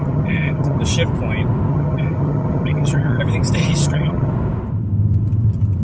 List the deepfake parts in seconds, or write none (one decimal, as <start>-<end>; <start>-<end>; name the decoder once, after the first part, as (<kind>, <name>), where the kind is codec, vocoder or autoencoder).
0.0-0.8 (vocoder, HiFi-GAN); 1.7-3.2; 3.6-4.3